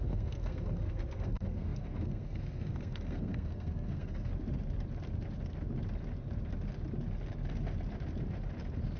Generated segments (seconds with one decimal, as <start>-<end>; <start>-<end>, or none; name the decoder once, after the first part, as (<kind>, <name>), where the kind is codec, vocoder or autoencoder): 0.0-4.3 (codec, SNAC)